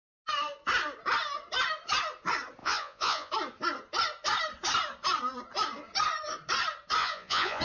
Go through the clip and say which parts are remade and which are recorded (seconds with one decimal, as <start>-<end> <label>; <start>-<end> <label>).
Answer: 0.0-2.6 recorded; 2.6-3.3 remade; 3.3-7.0 recorded; 7.0-7.6 remade